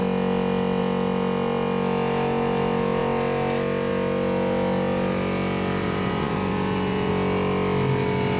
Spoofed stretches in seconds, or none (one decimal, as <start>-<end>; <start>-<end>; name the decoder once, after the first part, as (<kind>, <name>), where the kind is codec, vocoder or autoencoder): 5.8-7.1 (vocoder, Vocos)